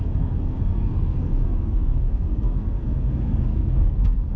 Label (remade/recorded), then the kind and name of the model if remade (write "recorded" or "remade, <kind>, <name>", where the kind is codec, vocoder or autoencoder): remade, codec, SNAC